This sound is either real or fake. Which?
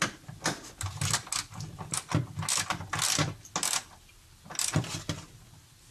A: real